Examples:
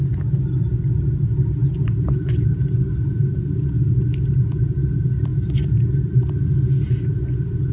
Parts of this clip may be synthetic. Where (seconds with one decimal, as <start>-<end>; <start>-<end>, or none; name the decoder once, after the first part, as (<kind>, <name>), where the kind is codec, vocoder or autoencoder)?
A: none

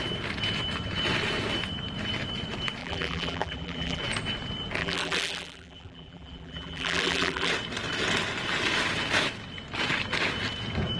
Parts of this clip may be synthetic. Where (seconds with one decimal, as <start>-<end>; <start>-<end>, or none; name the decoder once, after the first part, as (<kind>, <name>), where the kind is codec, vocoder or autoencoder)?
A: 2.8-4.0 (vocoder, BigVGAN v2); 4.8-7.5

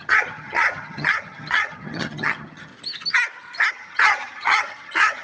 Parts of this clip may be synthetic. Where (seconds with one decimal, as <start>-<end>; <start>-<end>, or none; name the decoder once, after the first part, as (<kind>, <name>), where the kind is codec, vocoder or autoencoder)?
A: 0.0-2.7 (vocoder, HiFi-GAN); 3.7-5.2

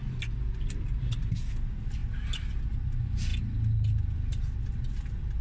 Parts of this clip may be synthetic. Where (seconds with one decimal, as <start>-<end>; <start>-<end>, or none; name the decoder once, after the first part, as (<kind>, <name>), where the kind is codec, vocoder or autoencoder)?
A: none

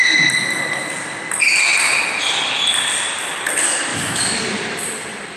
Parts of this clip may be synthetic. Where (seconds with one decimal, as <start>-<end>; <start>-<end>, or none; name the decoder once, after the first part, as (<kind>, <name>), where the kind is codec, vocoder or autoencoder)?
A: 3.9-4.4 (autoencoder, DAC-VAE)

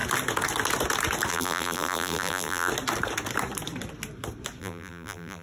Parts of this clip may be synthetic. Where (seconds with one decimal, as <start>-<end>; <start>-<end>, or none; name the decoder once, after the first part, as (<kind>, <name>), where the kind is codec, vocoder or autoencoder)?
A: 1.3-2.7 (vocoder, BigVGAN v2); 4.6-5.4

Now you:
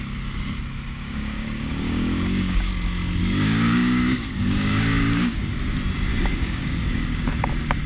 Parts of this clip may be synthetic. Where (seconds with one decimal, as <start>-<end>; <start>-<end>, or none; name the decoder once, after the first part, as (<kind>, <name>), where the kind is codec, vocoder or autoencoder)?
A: 1.0-2.7 (codec, DAC); 3.2-5.4; 6.1-7.5

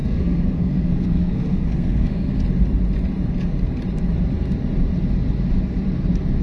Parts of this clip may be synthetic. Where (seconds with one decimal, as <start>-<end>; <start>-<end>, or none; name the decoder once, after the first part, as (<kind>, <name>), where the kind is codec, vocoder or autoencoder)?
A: 0.0-2.4 (codec, SNAC)